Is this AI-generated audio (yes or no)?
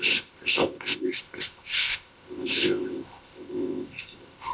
yes